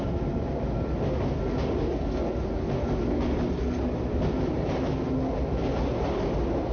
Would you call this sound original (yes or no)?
yes